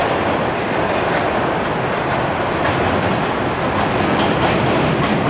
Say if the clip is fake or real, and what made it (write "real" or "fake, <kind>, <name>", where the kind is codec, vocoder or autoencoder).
real